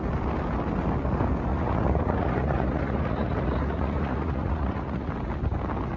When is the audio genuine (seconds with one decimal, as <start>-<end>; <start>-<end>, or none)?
0.0-1.5; 5.1-6.0